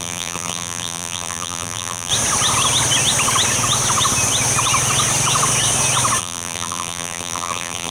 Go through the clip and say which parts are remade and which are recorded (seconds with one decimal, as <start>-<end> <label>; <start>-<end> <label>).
0.0-2.1 remade; 2.1-6.2 recorded; 6.2-7.9 remade